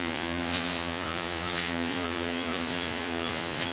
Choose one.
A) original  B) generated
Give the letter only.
B